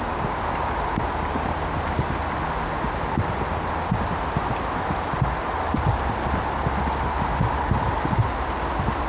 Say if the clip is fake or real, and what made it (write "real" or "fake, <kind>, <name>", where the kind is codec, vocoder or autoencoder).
real